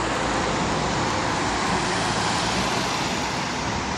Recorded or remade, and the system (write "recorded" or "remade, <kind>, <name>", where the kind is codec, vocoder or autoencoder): recorded